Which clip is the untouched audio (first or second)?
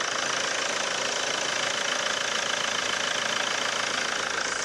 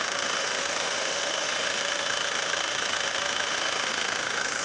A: first